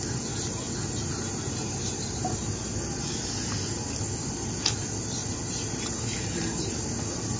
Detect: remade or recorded recorded